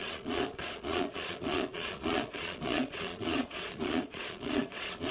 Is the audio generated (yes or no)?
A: yes